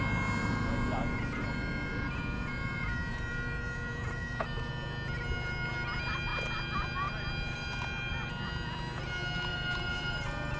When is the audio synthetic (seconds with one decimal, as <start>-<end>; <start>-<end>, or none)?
0.4-4.7; 9.5-10.6